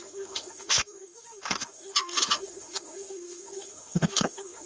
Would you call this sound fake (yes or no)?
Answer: yes